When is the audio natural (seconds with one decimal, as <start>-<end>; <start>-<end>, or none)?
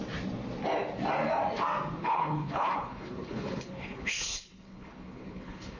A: 0.0-2.0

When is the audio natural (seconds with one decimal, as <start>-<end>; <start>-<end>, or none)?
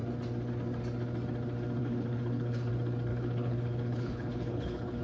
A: 0.0-1.8; 2.7-3.1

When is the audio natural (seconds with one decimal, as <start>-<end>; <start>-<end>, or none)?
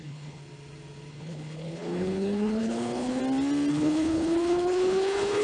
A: 0.4-1.1; 3.2-3.7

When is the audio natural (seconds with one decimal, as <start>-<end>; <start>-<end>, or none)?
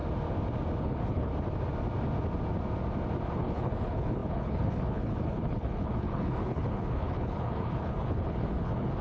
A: 0.0-0.8; 1.3-3.3